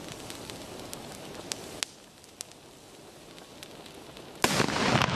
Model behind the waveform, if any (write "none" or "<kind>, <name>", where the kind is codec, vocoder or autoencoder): none